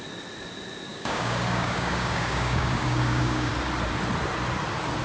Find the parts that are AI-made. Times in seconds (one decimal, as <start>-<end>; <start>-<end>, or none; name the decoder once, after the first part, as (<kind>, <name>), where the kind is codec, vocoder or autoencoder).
0.9-3.5 (codec, DAC)